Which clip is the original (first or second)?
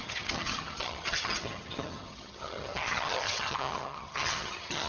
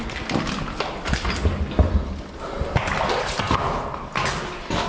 second